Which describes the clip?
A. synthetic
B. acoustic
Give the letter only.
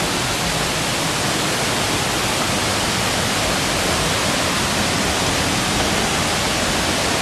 B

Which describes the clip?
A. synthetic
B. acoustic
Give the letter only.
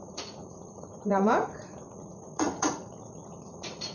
A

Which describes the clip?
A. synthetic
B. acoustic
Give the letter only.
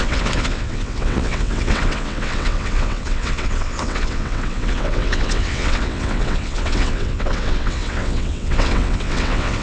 A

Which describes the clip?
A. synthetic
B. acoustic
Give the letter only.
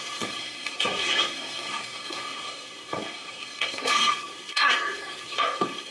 A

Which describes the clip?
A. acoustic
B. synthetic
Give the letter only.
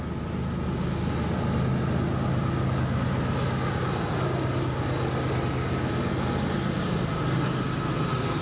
A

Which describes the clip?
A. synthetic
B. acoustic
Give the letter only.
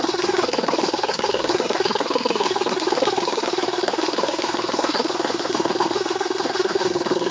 A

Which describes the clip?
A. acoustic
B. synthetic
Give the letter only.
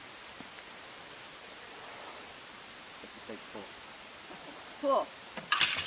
A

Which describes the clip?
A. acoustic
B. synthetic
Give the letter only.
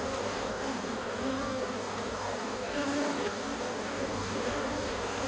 B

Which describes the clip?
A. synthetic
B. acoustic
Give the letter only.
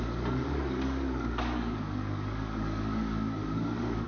A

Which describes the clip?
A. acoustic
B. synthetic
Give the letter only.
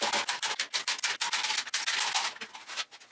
A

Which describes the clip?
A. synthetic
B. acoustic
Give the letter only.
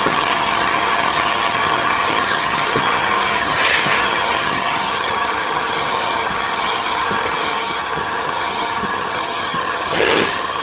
A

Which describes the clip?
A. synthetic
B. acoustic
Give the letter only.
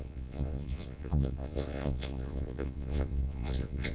A